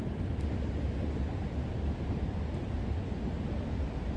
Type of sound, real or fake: real